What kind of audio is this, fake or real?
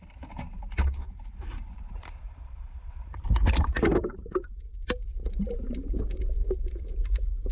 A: fake